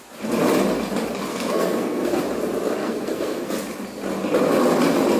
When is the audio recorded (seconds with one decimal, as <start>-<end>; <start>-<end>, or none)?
0.0-1.3; 2.2-2.8; 3.5-5.2